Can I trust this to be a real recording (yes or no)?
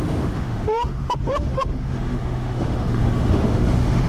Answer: no